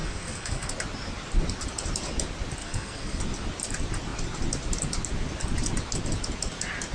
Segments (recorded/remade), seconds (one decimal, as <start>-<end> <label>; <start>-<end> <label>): 0.0-0.7 remade; 0.7-2.6 recorded; 2.6-3.2 remade; 3.2-6.9 recorded